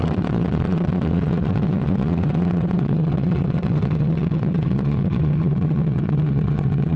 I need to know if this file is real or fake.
fake